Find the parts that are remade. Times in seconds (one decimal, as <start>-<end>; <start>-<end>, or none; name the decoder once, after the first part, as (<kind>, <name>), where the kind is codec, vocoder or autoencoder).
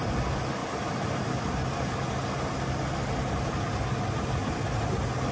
none